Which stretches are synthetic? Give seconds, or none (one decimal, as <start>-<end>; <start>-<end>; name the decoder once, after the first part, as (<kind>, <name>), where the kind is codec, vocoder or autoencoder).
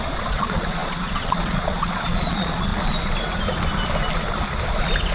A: 0.0-2.7 (vocoder, Vocos)